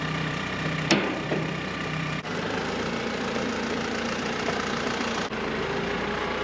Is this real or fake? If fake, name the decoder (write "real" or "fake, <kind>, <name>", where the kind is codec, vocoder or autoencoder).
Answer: fake, vocoder, BigVGAN v2